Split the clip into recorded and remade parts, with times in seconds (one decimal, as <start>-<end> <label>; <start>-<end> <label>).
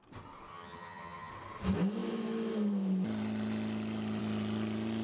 0.0-0.5 recorded; 0.5-1.3 remade; 1.3-5.0 recorded